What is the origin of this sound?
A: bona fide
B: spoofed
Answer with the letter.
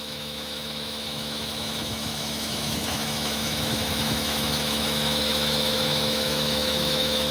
B